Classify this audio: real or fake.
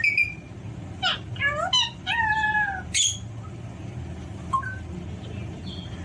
real